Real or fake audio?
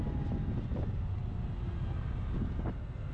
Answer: real